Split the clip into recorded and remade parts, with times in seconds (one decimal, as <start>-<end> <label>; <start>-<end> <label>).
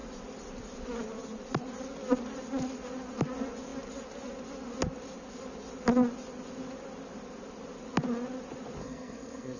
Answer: 0.0-8.8 recorded; 8.8-9.6 remade